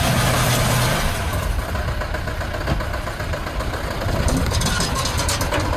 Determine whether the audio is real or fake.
real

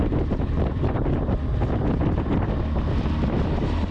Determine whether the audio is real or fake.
real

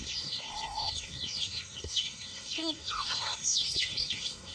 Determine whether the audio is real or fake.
fake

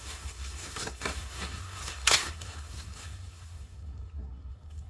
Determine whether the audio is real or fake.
fake